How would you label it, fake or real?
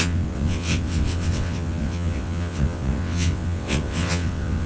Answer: fake